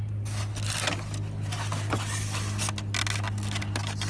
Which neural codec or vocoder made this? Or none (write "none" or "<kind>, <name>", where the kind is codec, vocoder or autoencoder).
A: none